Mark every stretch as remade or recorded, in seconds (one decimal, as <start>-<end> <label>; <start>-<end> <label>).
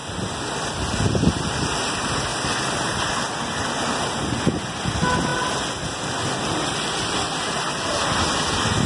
0.0-8.9 recorded